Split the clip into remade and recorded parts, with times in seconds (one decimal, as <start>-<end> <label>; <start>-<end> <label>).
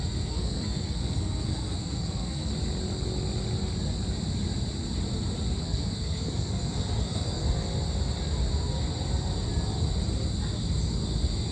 0.0-2.5 remade; 2.5-5.6 recorded; 5.6-7.4 remade; 7.4-11.5 recorded